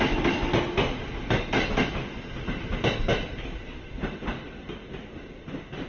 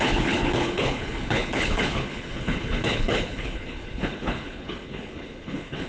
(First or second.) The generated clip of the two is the second